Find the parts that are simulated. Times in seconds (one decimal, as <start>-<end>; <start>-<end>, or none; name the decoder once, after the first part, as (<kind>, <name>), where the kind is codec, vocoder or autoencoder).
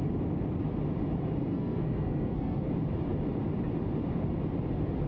1.5-2.7 (codec, SNAC)